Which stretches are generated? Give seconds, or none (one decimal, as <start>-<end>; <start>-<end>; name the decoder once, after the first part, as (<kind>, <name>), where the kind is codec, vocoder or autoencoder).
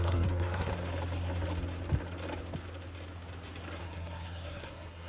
0.0-0.7 (codec, SNAC); 3.8-5.1